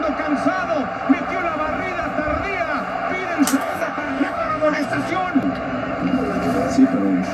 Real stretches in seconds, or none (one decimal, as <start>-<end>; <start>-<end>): 0.0-3.5; 5.1-7.3